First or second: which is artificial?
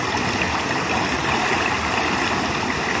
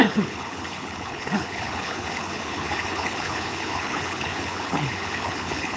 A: second